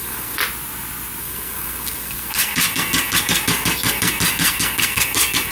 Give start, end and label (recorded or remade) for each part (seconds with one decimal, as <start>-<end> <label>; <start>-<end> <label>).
0.0-0.4 remade; 0.4-1.2 recorded; 1.2-5.5 remade